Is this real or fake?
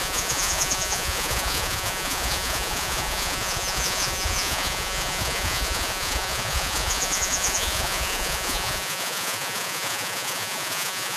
fake